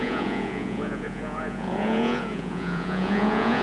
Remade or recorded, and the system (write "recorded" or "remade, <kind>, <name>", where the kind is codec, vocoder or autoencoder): remade, vocoder, Vocos